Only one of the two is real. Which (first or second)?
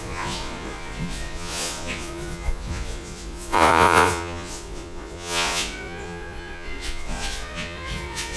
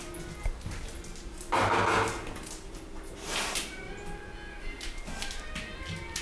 second